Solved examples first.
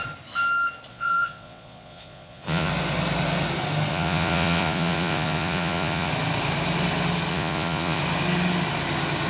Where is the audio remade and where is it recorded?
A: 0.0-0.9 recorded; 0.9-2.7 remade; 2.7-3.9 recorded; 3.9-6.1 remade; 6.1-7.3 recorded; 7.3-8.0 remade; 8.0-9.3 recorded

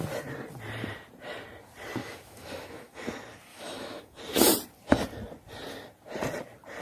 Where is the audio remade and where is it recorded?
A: 0.0-2.0 recorded; 2.0-3.1 remade; 3.1-3.5 recorded; 3.5-4.2 remade; 4.2-6.8 recorded

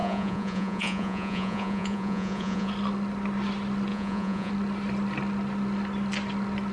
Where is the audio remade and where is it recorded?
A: 0.0-2.7 remade; 2.7-3.9 recorded; 3.9-4.5 remade; 4.5-6.7 recorded

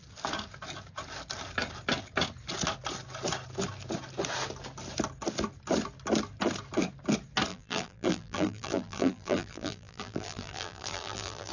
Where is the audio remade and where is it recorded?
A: 0.0-7.5 recorded; 7.5-11.5 remade

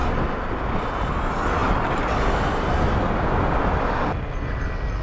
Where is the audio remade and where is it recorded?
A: 0.0-5.0 recorded